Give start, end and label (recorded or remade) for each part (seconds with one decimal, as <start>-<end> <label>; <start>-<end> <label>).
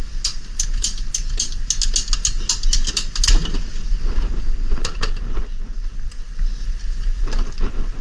0.0-8.0 recorded